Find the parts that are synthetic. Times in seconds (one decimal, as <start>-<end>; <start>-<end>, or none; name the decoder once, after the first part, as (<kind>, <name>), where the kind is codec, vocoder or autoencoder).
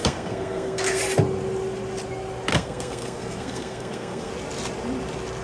0.0-1.0 (codec, SNAC); 2.5-4.3